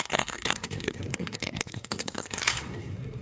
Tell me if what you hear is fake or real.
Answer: fake